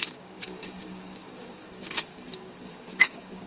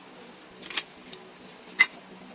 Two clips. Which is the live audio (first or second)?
second